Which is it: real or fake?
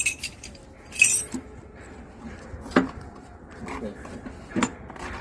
fake